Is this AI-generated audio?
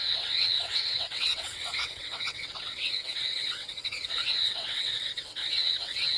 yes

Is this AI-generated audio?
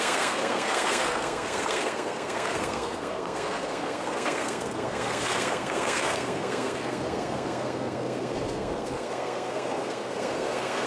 yes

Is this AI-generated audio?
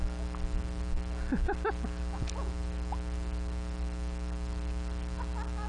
no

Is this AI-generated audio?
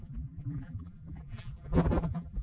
yes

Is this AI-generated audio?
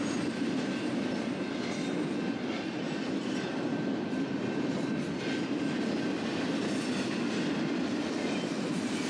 no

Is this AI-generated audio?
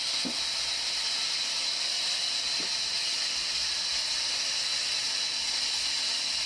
no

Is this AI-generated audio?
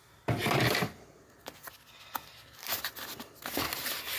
no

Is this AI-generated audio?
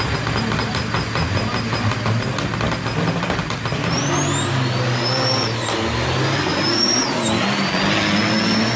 no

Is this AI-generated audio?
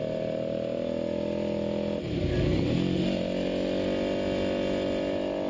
no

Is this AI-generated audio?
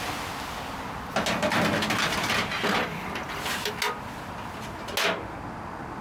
no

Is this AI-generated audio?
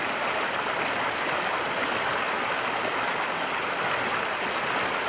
no